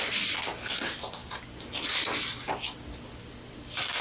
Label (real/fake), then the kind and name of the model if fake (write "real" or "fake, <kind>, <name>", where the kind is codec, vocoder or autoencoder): real